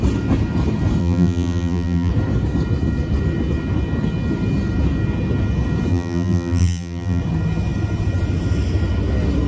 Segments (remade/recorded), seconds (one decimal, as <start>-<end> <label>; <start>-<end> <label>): 0.0-1.0 recorded; 1.0-2.1 remade; 2.1-5.9 recorded; 5.9-7.2 remade; 7.2-9.5 recorded